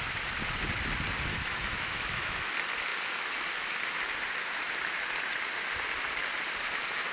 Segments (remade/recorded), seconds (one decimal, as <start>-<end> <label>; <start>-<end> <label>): 0.0-1.3 recorded; 1.3-2.5 remade; 2.5-7.1 recorded